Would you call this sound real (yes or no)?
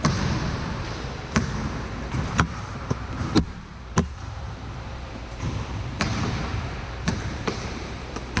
no